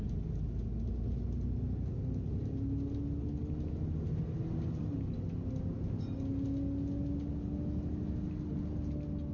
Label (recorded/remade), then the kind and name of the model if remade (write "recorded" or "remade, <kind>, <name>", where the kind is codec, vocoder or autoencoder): recorded